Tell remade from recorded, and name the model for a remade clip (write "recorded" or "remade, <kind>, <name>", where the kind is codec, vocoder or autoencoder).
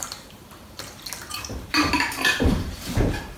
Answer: remade, vocoder, BigVGAN v2